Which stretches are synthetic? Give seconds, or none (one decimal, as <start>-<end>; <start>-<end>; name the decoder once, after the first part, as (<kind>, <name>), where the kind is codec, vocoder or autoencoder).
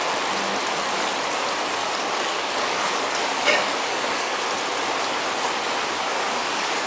1.8-4.4 (codec, DAC); 6.1-6.9